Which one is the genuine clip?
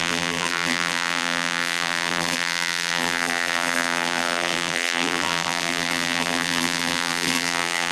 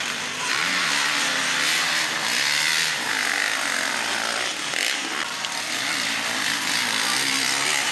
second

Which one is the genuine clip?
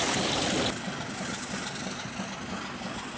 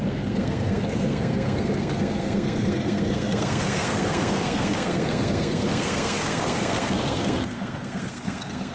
first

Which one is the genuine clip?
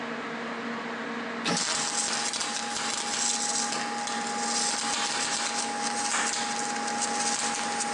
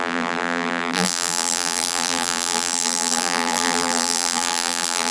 first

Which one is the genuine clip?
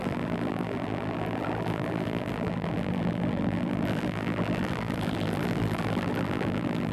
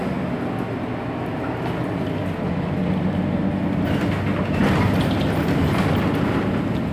second